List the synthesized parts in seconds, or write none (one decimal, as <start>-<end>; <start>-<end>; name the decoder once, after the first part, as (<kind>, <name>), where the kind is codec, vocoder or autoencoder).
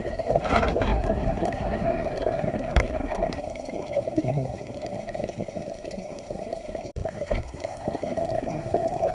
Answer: 0.0-9.1 (codec, SNAC)